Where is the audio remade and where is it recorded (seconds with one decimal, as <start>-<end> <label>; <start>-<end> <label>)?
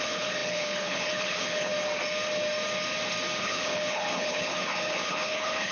0.0-1.7 remade; 1.7-3.4 recorded; 3.4-5.7 remade